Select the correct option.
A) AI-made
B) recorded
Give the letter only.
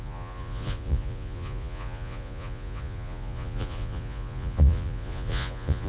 A